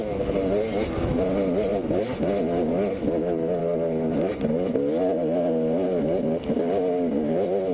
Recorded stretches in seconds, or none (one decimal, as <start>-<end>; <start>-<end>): 0.0-7.7